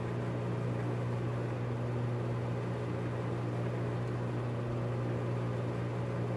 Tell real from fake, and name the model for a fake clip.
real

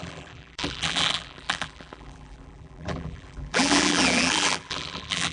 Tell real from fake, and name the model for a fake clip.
fake, vocoder, BigVGAN v2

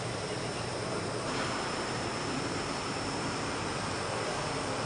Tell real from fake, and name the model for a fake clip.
fake, vocoder, BigVGAN v2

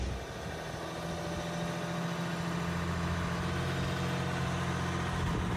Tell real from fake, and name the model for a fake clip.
real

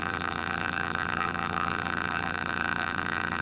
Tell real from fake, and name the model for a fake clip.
fake, vocoder, BigVGAN v2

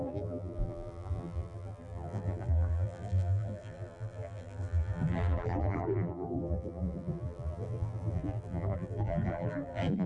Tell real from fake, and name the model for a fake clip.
fake, vocoder, BigVGAN v2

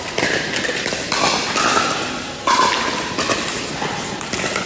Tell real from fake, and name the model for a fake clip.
real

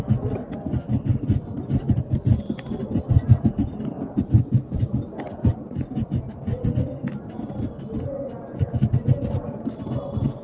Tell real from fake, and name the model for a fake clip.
real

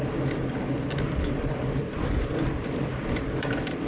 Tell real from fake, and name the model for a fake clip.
real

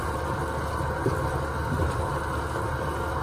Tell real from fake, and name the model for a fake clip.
real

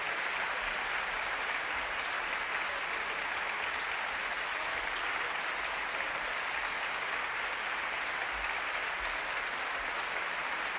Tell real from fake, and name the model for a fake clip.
real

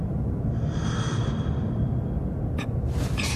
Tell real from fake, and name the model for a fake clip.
fake, vocoder, BigVGAN v2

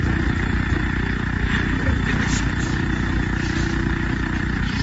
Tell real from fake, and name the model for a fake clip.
real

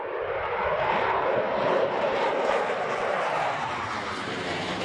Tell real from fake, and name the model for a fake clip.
fake, vocoder, BigVGAN v2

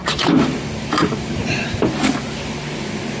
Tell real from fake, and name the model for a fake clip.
fake, vocoder, BigVGAN v2